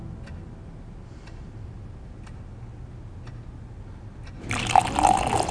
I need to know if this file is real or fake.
real